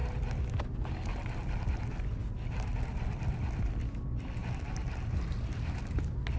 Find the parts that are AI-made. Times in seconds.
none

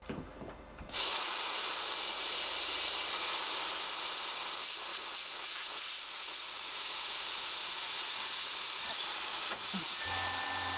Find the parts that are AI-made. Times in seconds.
1.1-1.6 (vocoder, Vocos); 4.9-8.9; 9.3-10.1